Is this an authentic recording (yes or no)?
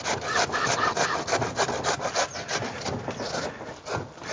yes